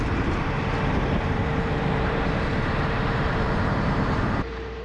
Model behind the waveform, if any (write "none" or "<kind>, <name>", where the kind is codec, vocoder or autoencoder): vocoder, BigVGAN v2